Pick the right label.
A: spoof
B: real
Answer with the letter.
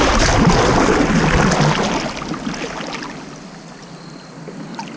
B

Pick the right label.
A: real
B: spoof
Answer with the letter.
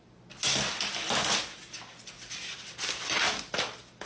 A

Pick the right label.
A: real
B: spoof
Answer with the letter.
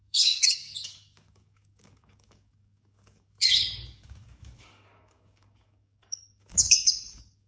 B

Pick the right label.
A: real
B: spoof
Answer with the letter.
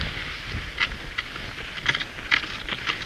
A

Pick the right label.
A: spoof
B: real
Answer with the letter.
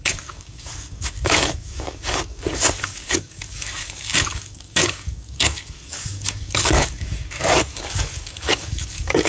A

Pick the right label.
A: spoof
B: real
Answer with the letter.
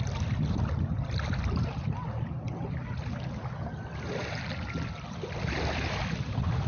B